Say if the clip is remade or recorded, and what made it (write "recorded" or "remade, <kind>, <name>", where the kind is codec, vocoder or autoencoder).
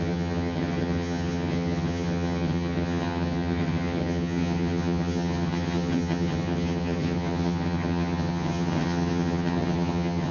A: remade, vocoder, HiFi-GAN